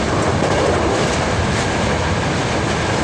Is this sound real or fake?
real